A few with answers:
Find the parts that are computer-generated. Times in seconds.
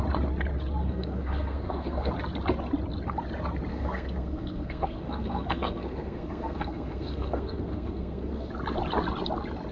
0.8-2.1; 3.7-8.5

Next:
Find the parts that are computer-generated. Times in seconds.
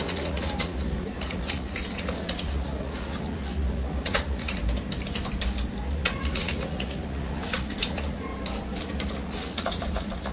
0.0-4.6; 5.9-8.3; 8.8-10.3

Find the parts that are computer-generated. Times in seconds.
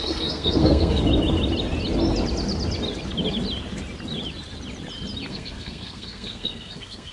0.0-1.0; 5.3-7.1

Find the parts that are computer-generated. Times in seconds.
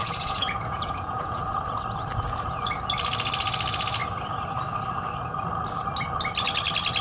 0.0-1.4